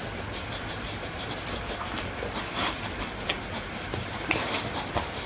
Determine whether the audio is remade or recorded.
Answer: recorded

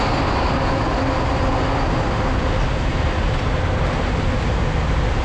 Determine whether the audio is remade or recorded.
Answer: recorded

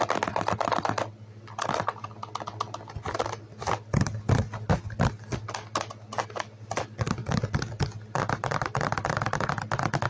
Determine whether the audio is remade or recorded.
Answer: recorded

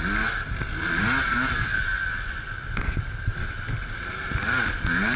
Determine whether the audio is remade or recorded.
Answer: recorded